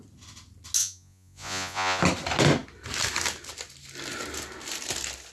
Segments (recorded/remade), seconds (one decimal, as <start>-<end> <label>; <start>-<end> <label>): 0.0-0.8 recorded; 0.8-2.0 remade; 2.0-5.3 recorded

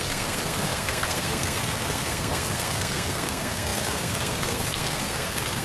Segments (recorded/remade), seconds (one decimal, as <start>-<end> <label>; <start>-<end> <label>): 0.0-5.6 remade

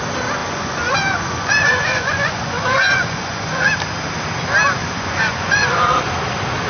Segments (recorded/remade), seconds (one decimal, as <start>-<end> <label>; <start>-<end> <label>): 0.0-0.4 recorded; 0.4-3.7 remade; 3.7-4.8 recorded; 4.8-6.1 remade; 6.1-6.7 recorded

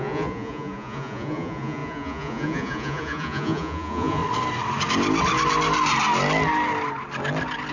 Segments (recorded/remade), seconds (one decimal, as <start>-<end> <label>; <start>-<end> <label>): 0.0-4.2 remade; 4.2-7.7 recorded

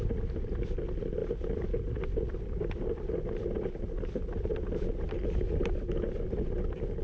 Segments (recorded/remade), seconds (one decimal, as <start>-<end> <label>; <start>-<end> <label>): 0.0-7.0 recorded

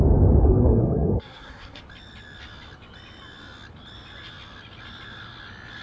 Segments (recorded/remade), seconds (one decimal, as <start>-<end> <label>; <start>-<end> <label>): 0.0-0.4 recorded; 0.4-1.8 remade; 1.8-5.8 recorded

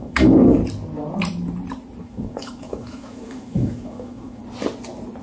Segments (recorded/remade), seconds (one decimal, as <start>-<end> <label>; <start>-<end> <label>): 0.0-0.6 remade; 0.6-2.0 recorded; 2.0-4.4 remade; 4.4-5.2 recorded

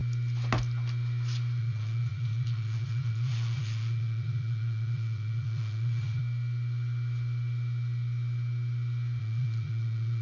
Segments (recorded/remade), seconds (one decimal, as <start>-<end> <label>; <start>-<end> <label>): 0.0-1.6 recorded; 1.6-6.2 remade; 6.2-9.2 recorded; 9.2-10.2 remade